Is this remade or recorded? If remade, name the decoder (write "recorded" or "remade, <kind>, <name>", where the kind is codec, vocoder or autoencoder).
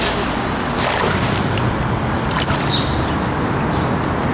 recorded